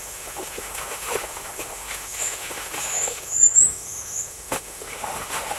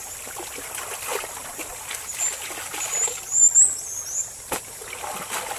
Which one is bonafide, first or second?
second